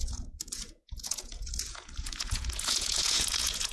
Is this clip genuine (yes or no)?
no